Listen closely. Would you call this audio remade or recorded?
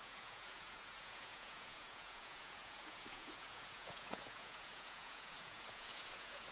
remade